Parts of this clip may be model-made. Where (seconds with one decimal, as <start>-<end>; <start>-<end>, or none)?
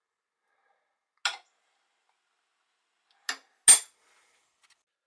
none